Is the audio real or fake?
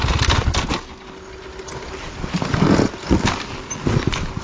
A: real